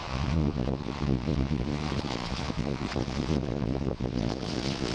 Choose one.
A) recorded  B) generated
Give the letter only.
B